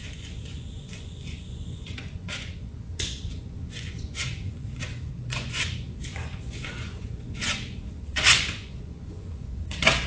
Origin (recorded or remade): remade